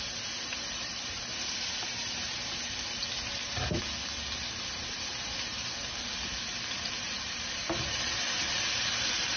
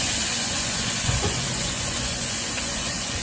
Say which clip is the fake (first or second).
second